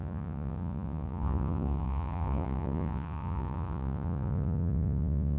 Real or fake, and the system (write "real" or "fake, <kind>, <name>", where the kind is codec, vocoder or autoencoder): fake, vocoder, Vocos